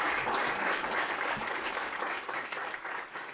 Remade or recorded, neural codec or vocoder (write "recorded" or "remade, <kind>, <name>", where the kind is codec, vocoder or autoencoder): remade, codec, DAC